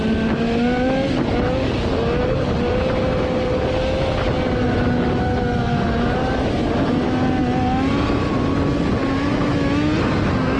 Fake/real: real